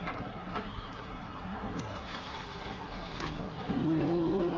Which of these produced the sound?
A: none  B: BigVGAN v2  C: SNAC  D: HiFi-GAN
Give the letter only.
C